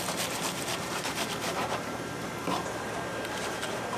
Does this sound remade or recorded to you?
remade